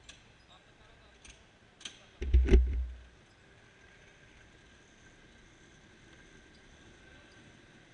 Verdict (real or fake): real